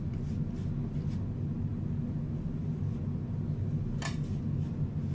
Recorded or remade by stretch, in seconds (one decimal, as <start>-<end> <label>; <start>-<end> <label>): 0.0-5.1 recorded